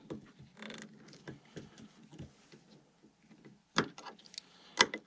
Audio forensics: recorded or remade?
recorded